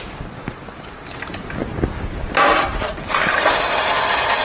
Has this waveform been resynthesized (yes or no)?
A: no